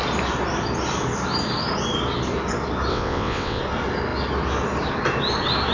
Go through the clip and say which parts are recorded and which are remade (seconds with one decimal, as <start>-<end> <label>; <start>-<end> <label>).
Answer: 0.0-2.9 recorded; 2.9-3.6 remade; 3.6-5.7 recorded